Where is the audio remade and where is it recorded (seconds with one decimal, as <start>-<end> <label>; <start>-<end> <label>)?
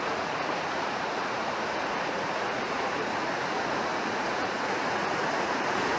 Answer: 0.0-6.0 remade